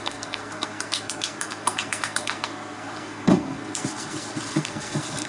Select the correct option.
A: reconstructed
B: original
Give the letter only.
A